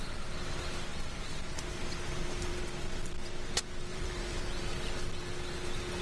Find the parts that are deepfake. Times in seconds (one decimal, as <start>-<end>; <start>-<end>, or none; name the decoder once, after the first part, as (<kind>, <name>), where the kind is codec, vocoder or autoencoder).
3.9-4.4 (vocoder, BigVGAN v2)